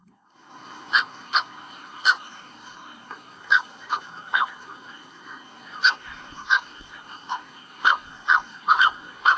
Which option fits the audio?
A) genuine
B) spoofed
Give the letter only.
B